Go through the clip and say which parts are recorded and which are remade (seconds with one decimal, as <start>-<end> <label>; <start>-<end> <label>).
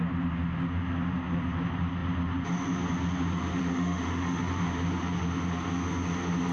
0.0-3.6 recorded; 3.6-4.4 remade; 4.4-6.5 recorded